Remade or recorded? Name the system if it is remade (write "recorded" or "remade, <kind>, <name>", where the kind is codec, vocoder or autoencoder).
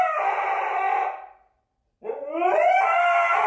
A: recorded